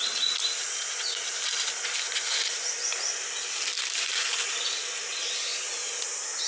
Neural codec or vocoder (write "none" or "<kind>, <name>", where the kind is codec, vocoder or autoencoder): none